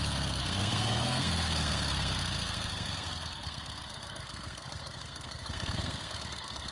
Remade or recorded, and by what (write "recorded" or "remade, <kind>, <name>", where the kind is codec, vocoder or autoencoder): remade, codec, SNAC